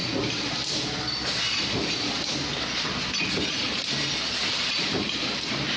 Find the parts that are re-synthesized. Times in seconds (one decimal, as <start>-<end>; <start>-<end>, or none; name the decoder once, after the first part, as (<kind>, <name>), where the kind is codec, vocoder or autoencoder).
none